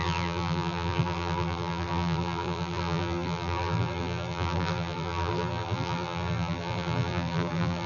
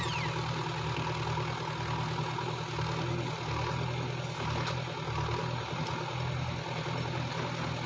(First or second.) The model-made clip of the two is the first